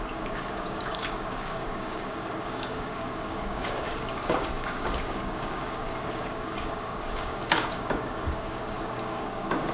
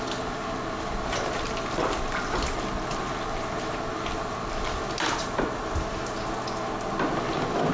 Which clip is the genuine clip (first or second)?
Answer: second